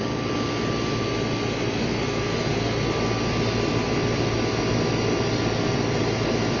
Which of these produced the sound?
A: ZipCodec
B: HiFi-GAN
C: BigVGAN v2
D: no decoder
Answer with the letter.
D